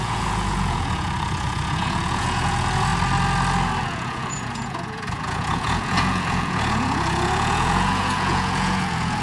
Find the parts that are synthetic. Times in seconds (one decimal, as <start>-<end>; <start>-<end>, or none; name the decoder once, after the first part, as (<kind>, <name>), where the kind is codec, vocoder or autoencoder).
0.0-2.9 (vocoder, Vocos); 3.8-9.2

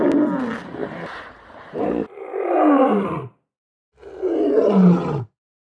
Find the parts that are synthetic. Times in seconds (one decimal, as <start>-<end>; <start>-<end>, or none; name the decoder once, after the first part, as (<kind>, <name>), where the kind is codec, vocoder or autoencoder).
none

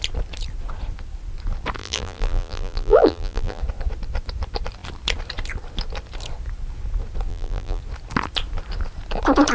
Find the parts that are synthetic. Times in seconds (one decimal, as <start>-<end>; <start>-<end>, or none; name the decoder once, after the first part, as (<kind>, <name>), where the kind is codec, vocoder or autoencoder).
1.8-3.6 (vocoder, BigVGAN v2); 7.3-7.8

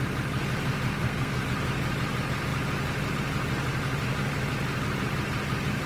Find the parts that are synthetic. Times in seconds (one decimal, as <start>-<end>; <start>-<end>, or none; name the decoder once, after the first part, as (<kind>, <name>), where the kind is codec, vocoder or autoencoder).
0.9-1.4 (codec, SNAC)